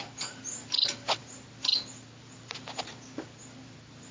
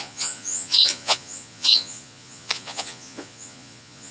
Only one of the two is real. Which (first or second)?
first